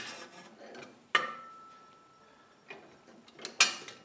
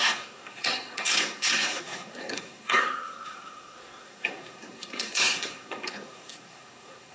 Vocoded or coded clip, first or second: second